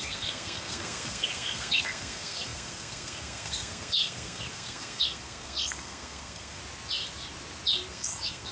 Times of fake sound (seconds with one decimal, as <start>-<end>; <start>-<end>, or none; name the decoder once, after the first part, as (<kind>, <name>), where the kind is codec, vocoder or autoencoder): 0.0-6.6 (codec, SNAC); 7.9-8.5